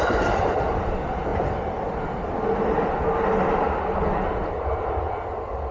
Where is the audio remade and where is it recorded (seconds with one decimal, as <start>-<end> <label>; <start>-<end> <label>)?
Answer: 0.0-5.7 recorded